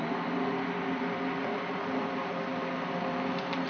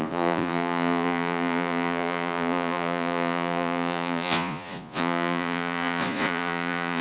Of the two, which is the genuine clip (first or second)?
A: first